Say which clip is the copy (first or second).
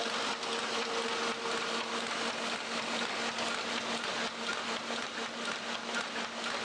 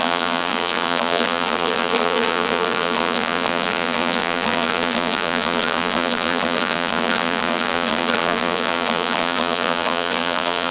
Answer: second